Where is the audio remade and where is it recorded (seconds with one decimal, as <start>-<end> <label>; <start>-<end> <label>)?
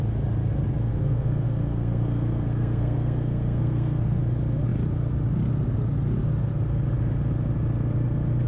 0.0-0.9 recorded; 0.9-4.2 remade; 4.2-8.5 recorded